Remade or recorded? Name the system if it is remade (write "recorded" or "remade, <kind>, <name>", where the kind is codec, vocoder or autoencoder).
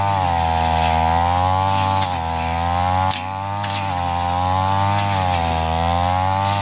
recorded